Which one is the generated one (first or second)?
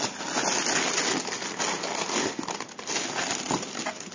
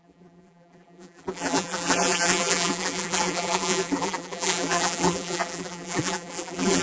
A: second